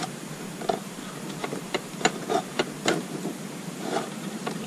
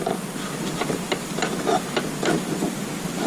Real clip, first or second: second